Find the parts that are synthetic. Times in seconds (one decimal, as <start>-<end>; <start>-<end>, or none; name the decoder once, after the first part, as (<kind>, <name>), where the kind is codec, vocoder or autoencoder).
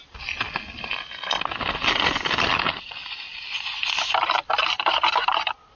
none